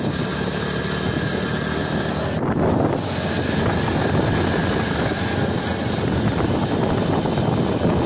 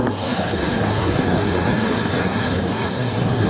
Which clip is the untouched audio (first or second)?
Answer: first